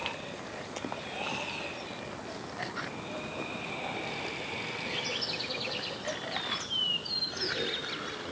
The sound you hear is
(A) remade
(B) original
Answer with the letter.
B